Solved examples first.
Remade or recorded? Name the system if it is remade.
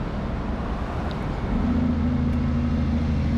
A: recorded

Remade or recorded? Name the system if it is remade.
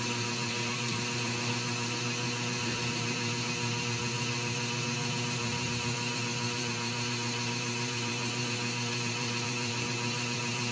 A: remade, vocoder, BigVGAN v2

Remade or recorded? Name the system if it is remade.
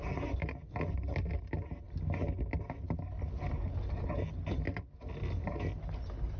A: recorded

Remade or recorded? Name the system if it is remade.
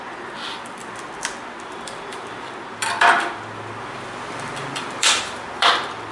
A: remade, vocoder, BigVGAN v2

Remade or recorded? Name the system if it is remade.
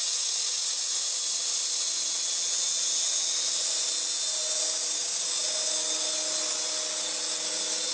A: recorded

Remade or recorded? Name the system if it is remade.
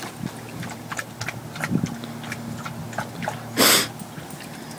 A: recorded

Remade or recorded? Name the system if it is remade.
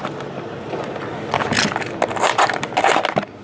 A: recorded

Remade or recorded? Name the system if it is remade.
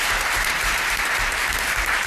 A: remade, vocoder, BigVGAN v2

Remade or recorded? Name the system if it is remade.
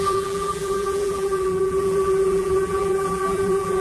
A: remade, vocoder, BigVGAN v2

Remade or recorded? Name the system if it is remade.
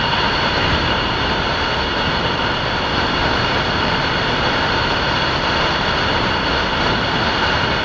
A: remade, vocoder, BigVGAN v2